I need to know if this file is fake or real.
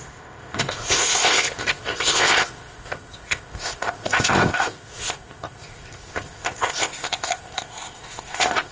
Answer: fake